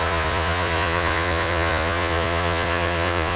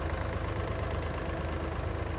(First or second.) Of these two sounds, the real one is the second